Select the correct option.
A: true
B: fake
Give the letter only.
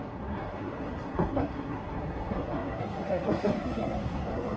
B